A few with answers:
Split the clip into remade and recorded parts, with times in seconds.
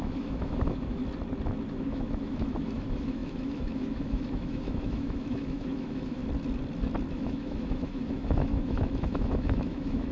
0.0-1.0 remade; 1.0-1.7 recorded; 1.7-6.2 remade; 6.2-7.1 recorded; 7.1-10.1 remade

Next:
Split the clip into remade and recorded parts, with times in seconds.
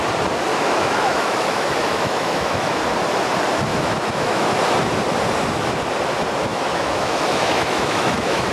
0.0-0.5 recorded; 0.5-2.8 remade; 2.8-3.7 recorded; 3.7-4.6 remade; 4.6-6.5 recorded; 6.5-8.5 remade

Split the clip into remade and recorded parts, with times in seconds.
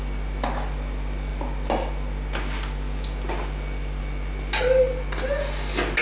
0.0-6.0 recorded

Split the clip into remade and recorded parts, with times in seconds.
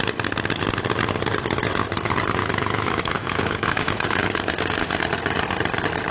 0.0-2.4 recorded; 2.4-4.2 remade; 4.2-6.1 recorded